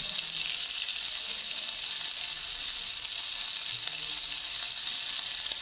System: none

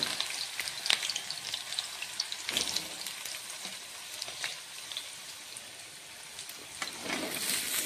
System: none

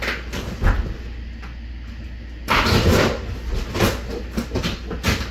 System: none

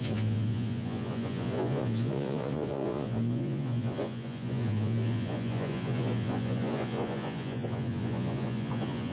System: vocoder, Vocos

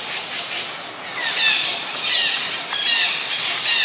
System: none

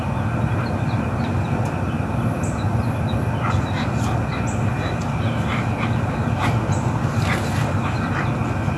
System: none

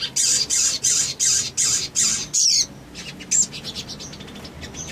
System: none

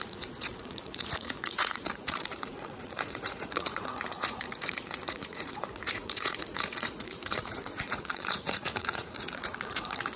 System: vocoder, Vocos